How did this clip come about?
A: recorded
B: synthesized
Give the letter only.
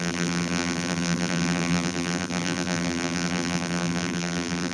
B